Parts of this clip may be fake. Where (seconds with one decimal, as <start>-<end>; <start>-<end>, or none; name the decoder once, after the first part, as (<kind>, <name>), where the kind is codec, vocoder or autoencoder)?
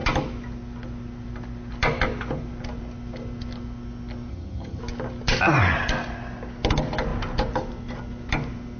4.3-4.8 (vocoder, HiFi-GAN)